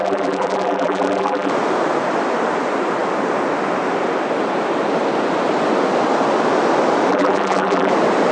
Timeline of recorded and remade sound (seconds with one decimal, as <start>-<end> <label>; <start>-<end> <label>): 0.0-1.5 remade; 1.5-7.1 recorded; 7.1-7.9 remade; 7.9-8.3 recorded